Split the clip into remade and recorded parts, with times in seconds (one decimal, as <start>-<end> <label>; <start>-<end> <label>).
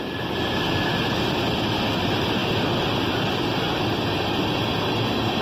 0.0-5.4 recorded